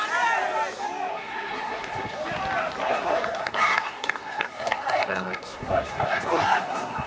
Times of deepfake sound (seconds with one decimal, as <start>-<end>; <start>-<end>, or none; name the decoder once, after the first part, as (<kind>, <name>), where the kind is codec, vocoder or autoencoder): 1.1-2.2 (codec, SNAC); 2.8-7.1